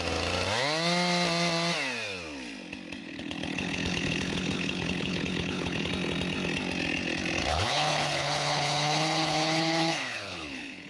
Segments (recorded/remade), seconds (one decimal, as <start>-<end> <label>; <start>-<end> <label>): 0.0-3.0 recorded; 3.0-5.9 remade; 5.9-7.5 recorded; 7.5-10.9 remade